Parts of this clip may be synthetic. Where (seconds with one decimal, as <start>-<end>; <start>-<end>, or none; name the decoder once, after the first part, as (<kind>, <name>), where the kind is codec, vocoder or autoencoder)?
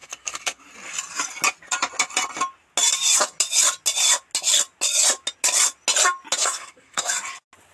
0.0-0.6 (codec, SNAC); 6.4-7.1